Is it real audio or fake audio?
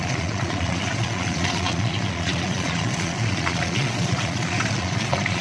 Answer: fake